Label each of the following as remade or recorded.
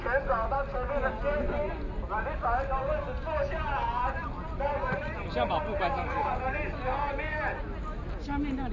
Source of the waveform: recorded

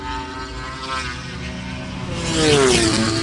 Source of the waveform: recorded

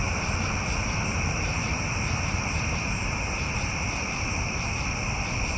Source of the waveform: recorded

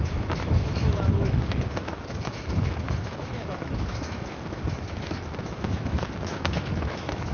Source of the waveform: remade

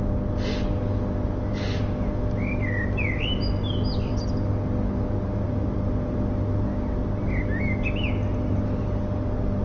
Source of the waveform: recorded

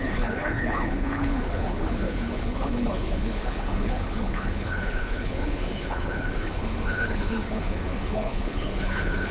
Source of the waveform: remade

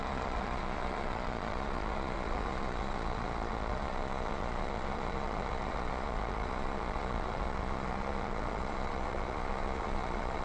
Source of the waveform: remade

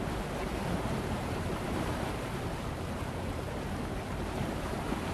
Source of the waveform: remade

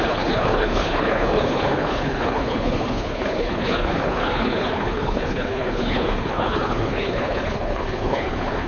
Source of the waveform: remade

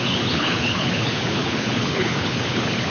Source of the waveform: remade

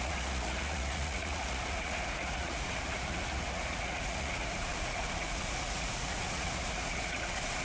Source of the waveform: remade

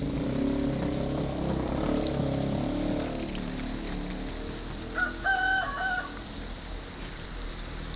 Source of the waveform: recorded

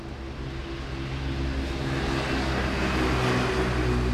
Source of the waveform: recorded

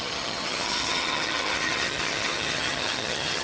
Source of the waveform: remade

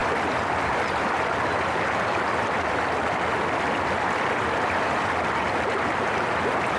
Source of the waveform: recorded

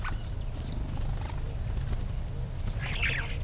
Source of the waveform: recorded